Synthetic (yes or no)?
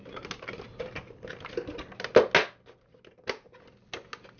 no